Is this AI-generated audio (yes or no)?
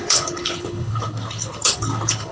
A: yes